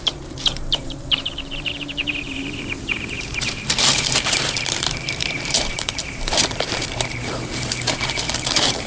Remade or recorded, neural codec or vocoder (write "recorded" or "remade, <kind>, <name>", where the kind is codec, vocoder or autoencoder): remade, vocoder, BigVGAN v2